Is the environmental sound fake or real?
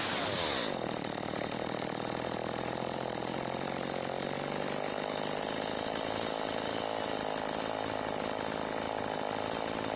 real